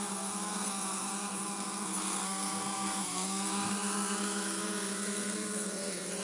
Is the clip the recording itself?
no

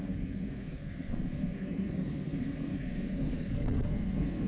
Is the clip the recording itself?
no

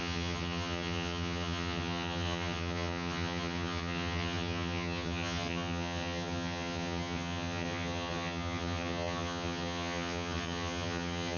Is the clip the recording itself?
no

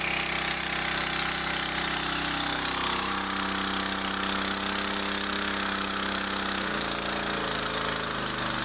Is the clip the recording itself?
yes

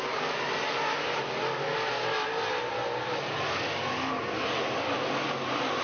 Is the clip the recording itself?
yes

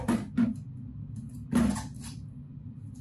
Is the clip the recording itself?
yes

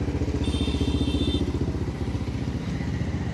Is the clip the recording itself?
yes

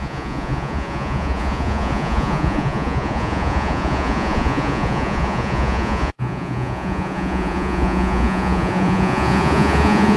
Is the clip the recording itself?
no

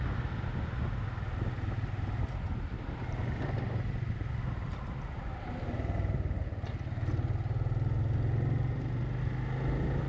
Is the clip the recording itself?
yes